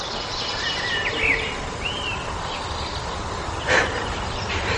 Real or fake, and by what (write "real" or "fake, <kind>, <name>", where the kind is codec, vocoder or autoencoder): fake, vocoder, BigVGAN v2